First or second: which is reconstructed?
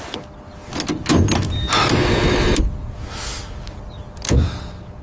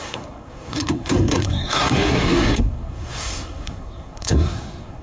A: second